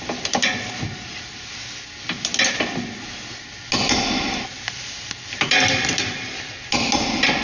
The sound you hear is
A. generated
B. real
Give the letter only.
B